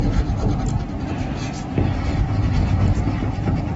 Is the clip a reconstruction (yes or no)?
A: no